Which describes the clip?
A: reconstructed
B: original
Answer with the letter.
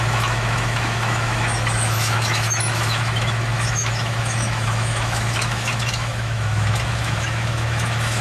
A